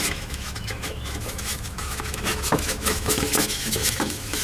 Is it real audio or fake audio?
fake